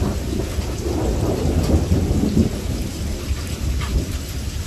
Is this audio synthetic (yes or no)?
no